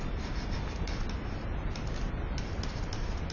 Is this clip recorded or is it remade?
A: recorded